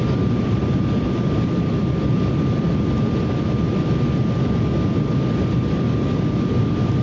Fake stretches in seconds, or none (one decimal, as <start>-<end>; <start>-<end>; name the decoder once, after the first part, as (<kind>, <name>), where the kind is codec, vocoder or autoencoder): 0.0-7.0 (vocoder, BigVGAN v2)